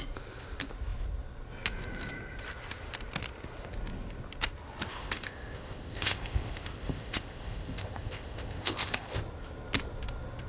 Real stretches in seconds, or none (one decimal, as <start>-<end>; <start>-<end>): 0.0-4.9; 9.2-10.5